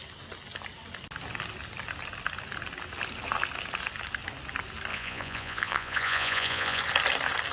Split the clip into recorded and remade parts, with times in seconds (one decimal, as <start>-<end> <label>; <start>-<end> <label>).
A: 0.0-4.9 recorded; 4.9-6.8 remade; 6.8-7.5 recorded